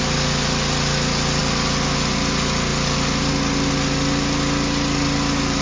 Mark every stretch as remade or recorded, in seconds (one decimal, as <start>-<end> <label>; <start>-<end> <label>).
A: 0.0-5.6 recorded